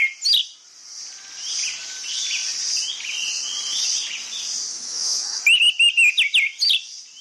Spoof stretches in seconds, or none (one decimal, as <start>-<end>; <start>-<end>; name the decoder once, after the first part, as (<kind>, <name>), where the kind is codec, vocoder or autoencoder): 4.7-5.4 (autoencoder, DAC-VAE)